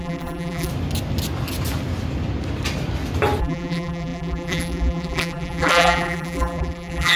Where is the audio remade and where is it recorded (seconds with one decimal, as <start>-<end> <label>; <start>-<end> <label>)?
0.0-0.7 remade; 0.7-3.4 recorded; 3.4-7.2 remade